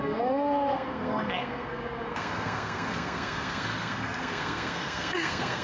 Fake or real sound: fake